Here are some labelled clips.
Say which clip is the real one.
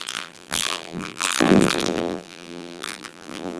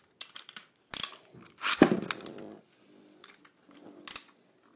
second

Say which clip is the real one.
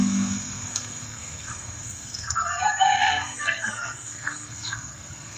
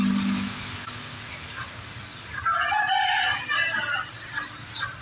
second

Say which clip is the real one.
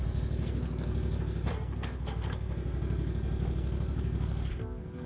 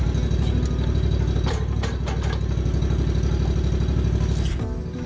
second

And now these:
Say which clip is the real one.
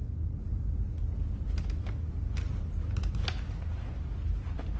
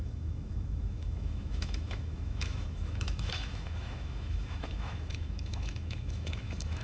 first